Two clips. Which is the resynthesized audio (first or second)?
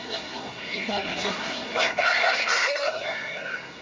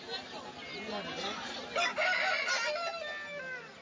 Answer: first